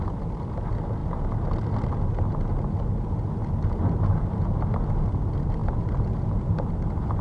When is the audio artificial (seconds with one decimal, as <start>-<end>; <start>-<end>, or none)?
none